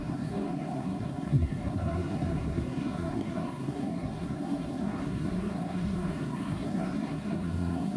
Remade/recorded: remade